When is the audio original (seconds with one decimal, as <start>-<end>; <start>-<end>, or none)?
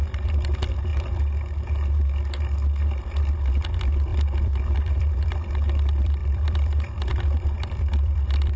0.9-3.0